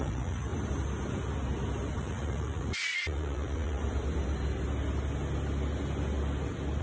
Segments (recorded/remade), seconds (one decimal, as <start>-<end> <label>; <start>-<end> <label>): 0.0-0.5 remade; 0.5-2.0 recorded; 2.0-3.8 remade; 3.8-6.8 recorded